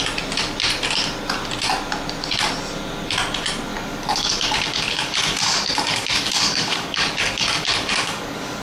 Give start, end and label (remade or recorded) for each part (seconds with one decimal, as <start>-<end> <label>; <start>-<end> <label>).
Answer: 0.0-3.7 recorded; 3.7-8.6 remade